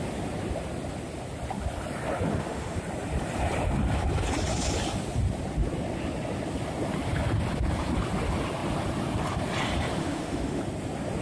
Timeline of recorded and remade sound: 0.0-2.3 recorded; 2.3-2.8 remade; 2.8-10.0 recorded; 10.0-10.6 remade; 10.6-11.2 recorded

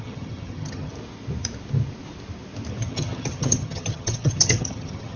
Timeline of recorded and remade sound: 0.0-0.9 remade; 0.9-2.7 recorded; 2.7-5.2 remade